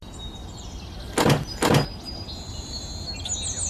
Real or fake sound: real